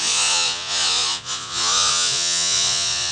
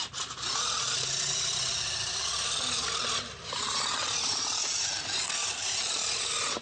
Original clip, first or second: second